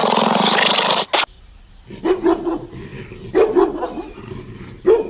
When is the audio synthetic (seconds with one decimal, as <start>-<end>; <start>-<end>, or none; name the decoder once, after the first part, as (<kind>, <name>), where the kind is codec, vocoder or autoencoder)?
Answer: none